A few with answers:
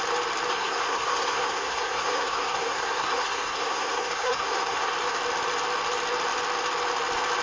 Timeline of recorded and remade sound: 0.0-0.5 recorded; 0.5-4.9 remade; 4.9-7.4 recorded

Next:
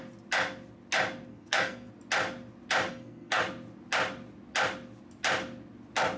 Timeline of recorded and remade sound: 0.0-1.3 recorded; 1.3-1.9 remade; 1.9-2.9 recorded; 2.9-3.4 remade; 3.4-6.2 recorded

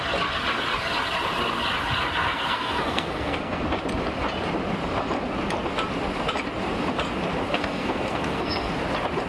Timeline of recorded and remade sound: 0.0-2.2 recorded; 2.2-3.6 remade; 3.6-7.5 recorded; 7.5-8.7 remade; 8.7-9.3 recorded

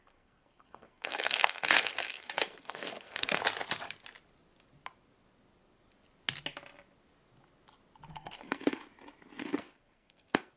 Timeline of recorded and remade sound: 0.0-3.4 remade; 3.4-8.1 recorded; 8.1-8.8 remade; 8.8-9.4 recorded; 9.4-10.6 remade

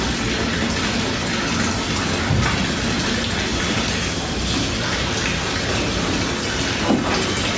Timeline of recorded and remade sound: 0.0-3.5 recorded; 3.5-6.1 remade; 6.1-7.6 recorded

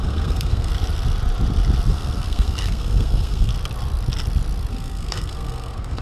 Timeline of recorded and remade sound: 0.0-0.7 remade; 0.7-1.9 recorded; 1.9-3.5 remade; 3.5-4.7 recorded; 4.7-6.0 remade

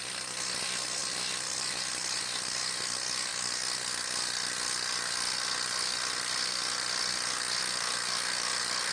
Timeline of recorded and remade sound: 0.0-1.0 recorded; 1.0-2.2 remade; 2.2-8.9 recorded

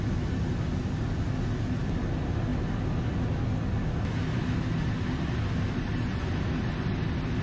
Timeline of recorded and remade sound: 0.0-7.4 recorded